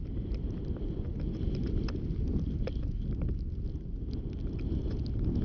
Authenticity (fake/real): real